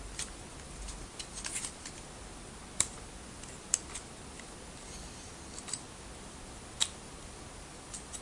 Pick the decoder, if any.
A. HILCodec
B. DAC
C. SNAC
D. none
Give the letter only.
D